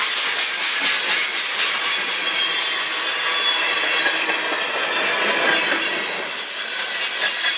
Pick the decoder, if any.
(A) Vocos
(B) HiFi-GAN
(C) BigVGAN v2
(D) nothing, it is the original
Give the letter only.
D